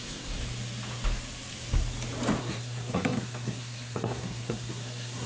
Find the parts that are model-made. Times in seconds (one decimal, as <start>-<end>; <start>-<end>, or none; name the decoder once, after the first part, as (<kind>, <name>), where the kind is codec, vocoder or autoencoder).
0.0-0.4 (codec, SNAC); 2.4-5.3